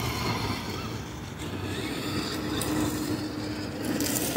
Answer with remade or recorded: recorded